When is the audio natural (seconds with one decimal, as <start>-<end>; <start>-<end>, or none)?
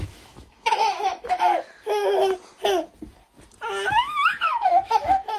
2.2-3.9